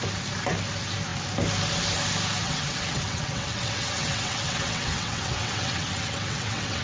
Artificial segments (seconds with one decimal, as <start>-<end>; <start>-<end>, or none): 2.4-6.8

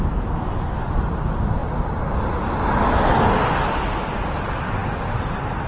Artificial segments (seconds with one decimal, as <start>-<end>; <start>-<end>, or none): none